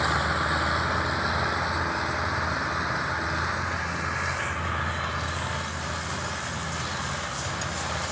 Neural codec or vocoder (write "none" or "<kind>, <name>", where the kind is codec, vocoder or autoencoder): none